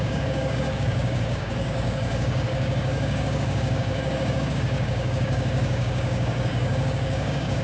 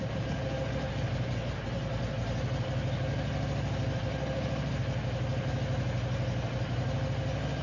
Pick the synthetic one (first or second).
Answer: first